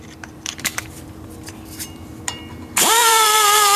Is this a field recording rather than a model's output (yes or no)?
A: no